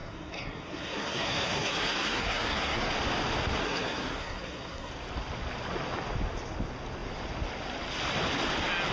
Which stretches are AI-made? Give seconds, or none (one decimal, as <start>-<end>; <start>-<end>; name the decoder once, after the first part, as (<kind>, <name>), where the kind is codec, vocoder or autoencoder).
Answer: 0.0-2.9 (codec, SNAC); 3.6-4.9